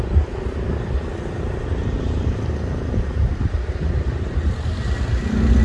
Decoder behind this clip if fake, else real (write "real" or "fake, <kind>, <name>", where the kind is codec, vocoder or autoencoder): real